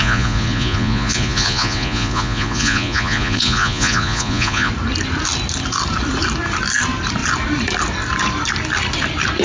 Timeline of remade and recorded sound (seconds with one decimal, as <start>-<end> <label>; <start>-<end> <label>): 0.0-4.7 remade; 4.7-9.4 recorded

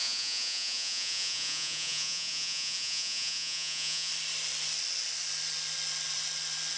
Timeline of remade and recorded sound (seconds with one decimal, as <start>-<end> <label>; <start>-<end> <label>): 0.0-4.1 remade; 4.1-6.8 recorded

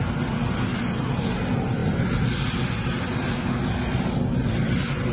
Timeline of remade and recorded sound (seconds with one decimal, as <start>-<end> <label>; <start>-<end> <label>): 0.0-5.1 recorded

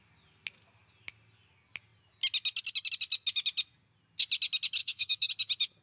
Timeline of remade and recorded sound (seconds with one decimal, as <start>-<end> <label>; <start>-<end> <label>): 0.0-4.8 recorded; 4.8-5.3 remade; 5.3-5.8 recorded